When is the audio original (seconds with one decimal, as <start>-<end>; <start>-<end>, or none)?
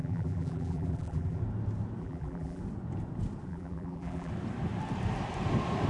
1.4-2.0; 2.6-3.5; 4.3-5.9